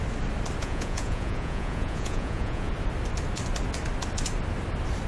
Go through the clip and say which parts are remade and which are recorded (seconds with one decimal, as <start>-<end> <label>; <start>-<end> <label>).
0.0-0.6 recorded; 0.6-2.7 remade; 2.7-5.1 recorded